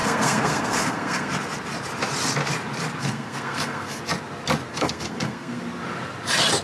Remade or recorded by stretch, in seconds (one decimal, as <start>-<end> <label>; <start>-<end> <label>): 0.0-1.3 remade; 1.3-3.0 recorded; 3.0-4.0 remade; 4.0-4.7 recorded; 4.7-5.6 remade; 5.6-6.6 recorded